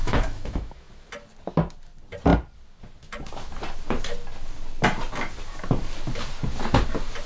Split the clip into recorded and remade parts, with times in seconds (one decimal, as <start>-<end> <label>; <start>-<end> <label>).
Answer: 0.0-0.9 remade; 0.9-7.3 recorded